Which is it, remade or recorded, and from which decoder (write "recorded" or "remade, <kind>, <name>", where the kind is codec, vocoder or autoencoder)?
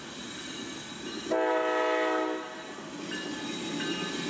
recorded